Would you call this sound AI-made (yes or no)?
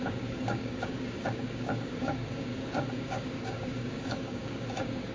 yes